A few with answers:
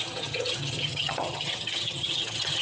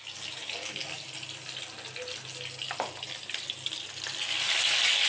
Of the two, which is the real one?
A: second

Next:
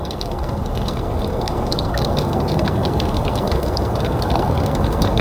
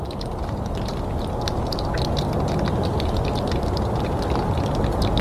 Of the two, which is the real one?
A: second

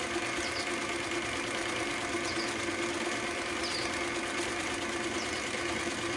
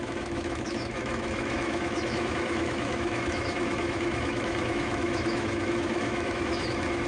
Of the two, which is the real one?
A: first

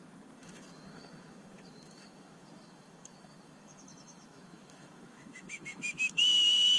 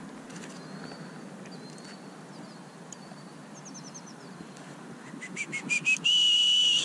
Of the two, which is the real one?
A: second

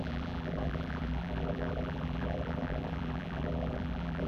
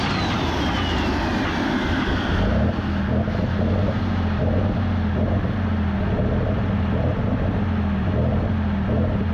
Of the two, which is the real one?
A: second